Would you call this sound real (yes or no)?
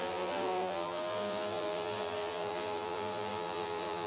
no